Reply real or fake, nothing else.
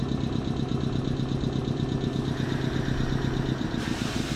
real